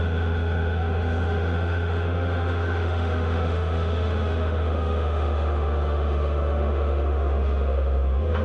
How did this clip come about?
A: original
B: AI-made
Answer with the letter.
B